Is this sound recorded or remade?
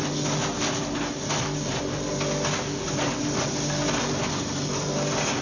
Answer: recorded